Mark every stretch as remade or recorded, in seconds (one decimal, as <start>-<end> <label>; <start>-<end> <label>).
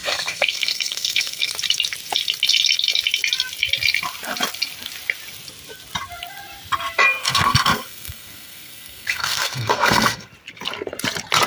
0.0-1.5 remade; 1.5-7.2 recorded; 7.2-10.3 remade; 10.3-11.5 recorded